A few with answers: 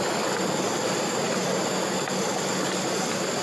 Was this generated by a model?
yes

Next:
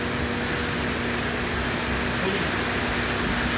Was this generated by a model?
no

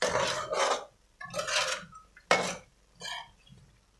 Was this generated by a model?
no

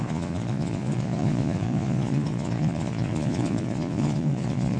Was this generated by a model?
yes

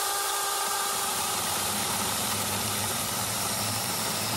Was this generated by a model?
yes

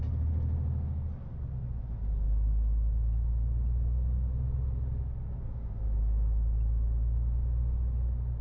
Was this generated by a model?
no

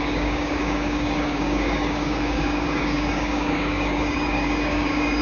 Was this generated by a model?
yes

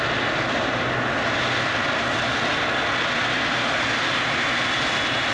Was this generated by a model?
no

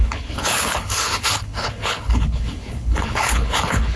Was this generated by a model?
yes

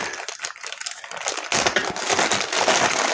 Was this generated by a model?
no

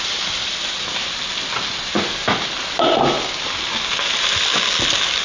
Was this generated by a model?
no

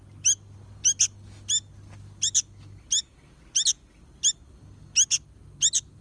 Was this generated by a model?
no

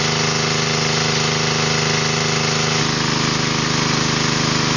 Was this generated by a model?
no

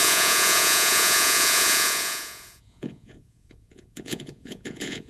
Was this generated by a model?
yes